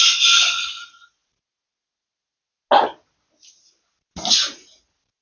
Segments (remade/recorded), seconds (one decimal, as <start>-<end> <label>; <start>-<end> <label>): 0.0-5.2 recorded